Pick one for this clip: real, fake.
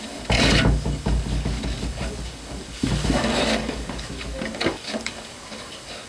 fake